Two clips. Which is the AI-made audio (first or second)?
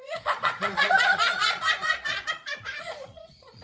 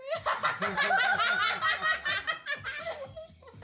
first